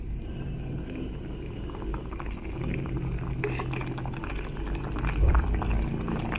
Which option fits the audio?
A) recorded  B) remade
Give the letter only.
A